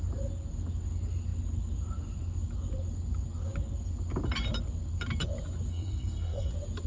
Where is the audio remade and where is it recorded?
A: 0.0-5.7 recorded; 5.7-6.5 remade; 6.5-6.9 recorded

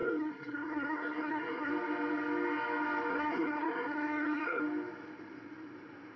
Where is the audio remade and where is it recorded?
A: 0.0-1.7 remade; 1.7-3.1 recorded; 3.1-4.6 remade; 4.6-6.2 recorded

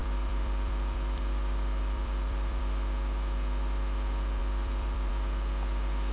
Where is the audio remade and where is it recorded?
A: 0.0-2.6 remade; 2.6-4.4 recorded; 4.4-5.1 remade; 5.1-6.1 recorded

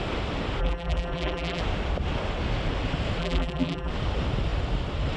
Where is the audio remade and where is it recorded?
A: 0.0-0.6 recorded; 0.6-1.6 remade; 1.6-3.2 recorded; 3.2-3.9 remade; 3.9-5.2 recorded

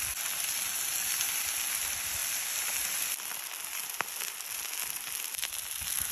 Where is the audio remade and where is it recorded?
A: 0.0-6.1 recorded